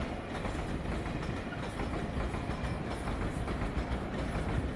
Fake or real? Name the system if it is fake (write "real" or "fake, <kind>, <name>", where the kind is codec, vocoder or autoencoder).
real